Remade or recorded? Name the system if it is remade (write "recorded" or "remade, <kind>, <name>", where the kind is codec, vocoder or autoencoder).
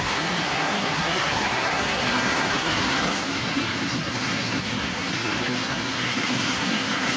remade, codec, SNAC